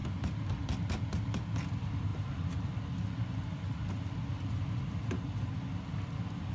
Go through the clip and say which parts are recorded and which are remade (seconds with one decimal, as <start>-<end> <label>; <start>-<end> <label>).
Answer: 0.0-6.5 recorded

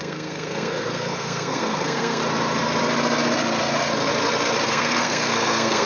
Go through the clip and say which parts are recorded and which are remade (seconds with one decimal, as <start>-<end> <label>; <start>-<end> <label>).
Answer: 0.0-2.2 remade; 2.2-4.7 recorded; 4.7-5.9 remade

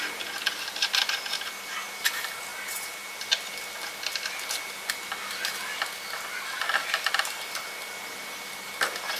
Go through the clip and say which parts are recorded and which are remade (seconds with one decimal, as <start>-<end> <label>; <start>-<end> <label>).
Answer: 0.0-9.2 recorded

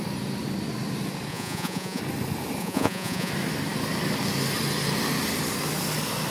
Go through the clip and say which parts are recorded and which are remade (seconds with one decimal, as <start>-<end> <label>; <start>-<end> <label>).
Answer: 0.0-1.3 recorded; 1.3-2.0 remade; 2.0-2.6 recorded; 2.6-3.3 remade; 3.3-6.3 recorded

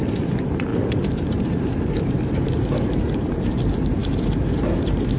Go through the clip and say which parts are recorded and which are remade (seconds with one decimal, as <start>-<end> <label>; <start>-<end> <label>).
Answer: 0.0-0.7 recorded; 0.7-3.6 remade; 3.6-4.0 recorded; 4.0-5.2 remade

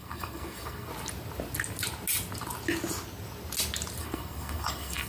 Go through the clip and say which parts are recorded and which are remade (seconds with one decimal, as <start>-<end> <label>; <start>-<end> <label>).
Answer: 0.0-0.9 remade; 0.9-4.0 recorded; 4.0-5.1 remade